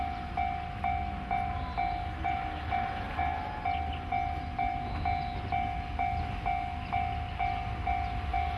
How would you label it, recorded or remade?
recorded